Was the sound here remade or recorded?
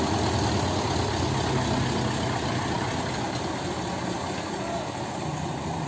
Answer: recorded